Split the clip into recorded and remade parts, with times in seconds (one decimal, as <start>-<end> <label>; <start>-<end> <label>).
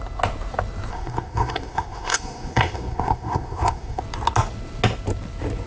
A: 0.0-0.9 recorded; 0.9-4.0 remade; 4.0-5.7 recorded